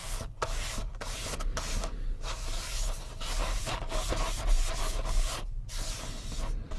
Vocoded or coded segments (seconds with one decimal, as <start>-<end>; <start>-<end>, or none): 0.0-4.1; 4.8-5.6